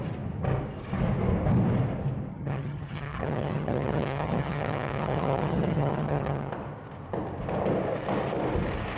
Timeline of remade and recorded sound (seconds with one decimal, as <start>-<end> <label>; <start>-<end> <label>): 0.0-2.3 recorded; 2.3-6.5 remade; 6.5-9.0 recorded